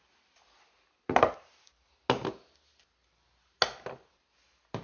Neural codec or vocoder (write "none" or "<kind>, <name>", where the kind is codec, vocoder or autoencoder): none